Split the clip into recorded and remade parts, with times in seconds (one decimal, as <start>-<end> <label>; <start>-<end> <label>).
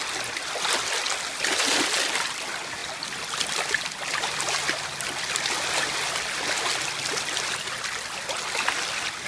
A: 0.0-9.3 recorded